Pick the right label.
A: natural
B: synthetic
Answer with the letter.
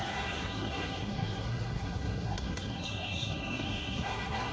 B